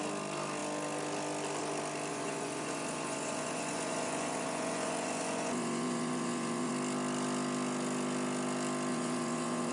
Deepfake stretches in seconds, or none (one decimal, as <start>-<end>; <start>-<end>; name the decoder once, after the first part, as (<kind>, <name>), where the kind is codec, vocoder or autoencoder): 2.1-6.7 (vocoder, Vocos); 8.9-9.7